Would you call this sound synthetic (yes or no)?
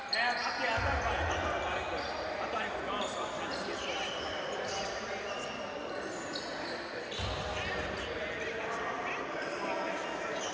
no